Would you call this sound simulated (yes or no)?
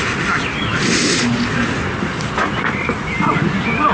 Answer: no